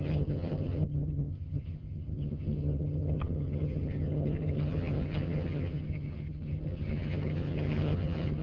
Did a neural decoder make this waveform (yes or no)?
yes